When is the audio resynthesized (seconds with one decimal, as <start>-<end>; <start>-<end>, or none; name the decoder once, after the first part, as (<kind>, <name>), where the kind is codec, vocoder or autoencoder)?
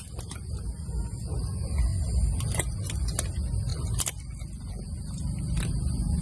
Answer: none